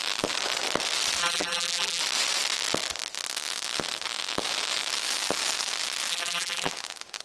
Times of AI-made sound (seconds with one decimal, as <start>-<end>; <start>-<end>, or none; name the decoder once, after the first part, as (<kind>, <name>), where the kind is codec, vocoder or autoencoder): 1.2-2.0 (vocoder, BigVGAN v2); 6.1-6.7

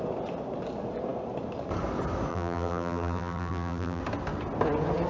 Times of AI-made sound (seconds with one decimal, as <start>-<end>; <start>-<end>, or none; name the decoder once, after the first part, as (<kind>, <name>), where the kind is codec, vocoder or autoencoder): 2.3-4.0 (vocoder, BigVGAN v2)